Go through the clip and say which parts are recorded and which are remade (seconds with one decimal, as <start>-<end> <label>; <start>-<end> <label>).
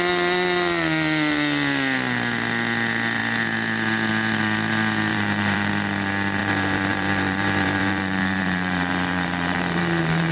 0.0-5.1 recorded; 5.1-5.7 remade; 5.7-6.4 recorded; 6.4-10.3 remade